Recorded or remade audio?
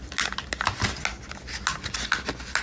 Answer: recorded